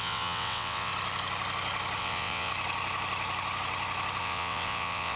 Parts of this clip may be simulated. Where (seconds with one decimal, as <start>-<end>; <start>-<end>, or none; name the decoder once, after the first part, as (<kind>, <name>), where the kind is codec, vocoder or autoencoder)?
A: 0.0-0.9 (vocoder, WaveNeXt); 2.0-2.5; 4.2-5.2

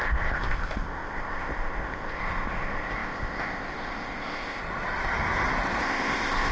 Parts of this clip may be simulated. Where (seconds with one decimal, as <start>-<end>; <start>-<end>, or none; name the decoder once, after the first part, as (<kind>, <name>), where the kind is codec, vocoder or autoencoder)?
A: 0.0-4.6 (codec, ZipCodec); 5.8-6.5

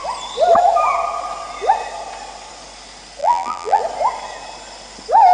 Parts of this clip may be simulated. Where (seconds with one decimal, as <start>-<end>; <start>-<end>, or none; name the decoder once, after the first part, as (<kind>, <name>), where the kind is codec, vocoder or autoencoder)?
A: 3.2-3.8 (vocoder, BigVGAN v2)

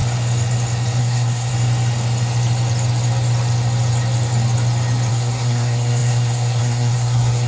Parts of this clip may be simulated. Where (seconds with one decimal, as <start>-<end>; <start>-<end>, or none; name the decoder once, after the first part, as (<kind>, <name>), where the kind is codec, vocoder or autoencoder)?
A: 1.0-1.5 (codec, SNAC); 5.1-7.5